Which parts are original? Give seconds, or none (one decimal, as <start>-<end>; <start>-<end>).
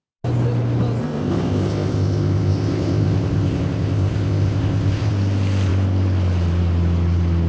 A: 0.0-1.0; 5.1-7.5